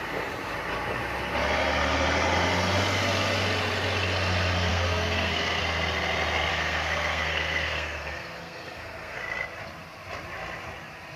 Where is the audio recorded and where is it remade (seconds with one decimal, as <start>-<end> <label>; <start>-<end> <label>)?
0.0-4.7 recorded; 4.7-5.6 remade; 5.6-6.5 recorded; 6.5-9.2 remade; 9.2-11.2 recorded